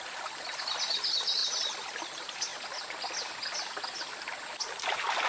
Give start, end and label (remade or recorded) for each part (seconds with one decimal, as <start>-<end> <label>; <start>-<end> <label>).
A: 0.0-5.3 recorded